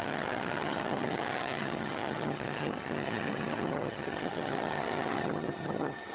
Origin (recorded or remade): remade